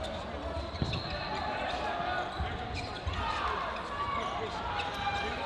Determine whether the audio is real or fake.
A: real